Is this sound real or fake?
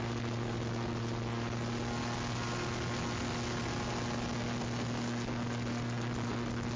real